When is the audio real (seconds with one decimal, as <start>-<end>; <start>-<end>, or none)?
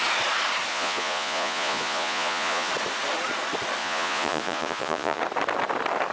0.0-0.7; 2.7-3.8; 5.2-6.1